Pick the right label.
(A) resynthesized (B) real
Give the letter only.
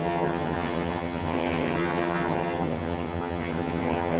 A